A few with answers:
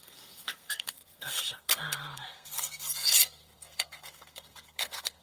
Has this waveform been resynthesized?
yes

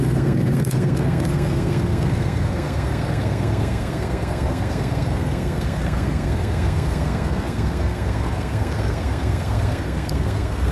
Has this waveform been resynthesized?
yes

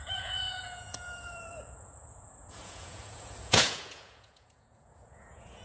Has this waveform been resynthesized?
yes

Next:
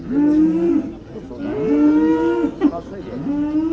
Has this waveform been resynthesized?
no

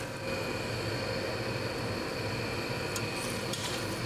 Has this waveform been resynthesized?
no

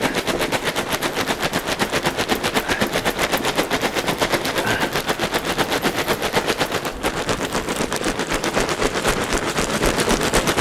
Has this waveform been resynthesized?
no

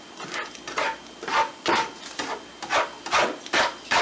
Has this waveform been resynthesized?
no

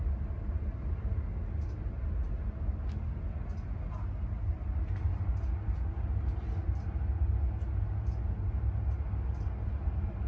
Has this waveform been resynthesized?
no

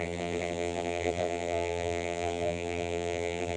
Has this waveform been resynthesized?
yes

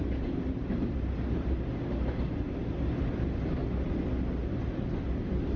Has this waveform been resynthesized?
no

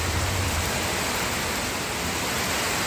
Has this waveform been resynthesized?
no